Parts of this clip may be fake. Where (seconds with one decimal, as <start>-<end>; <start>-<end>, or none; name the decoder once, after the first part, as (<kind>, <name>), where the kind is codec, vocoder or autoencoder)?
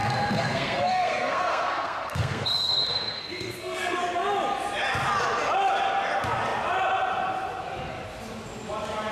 0.0-4.0 (codec, SNAC)